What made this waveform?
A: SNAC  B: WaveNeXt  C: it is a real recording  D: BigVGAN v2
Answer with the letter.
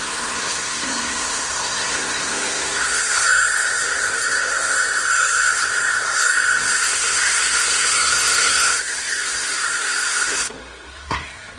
A